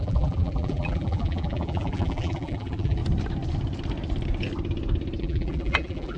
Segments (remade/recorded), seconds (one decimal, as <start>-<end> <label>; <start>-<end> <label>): 0.0-3.0 remade; 3.0-5.2 recorded; 5.2-6.2 remade